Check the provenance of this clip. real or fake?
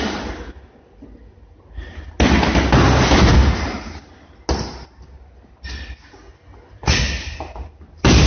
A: real